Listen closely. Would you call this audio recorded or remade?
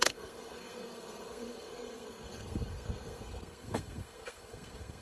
remade